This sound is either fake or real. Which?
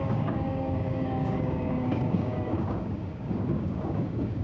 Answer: fake